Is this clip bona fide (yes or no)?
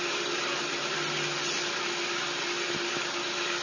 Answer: yes